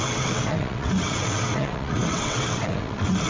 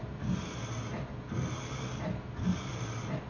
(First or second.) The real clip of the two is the second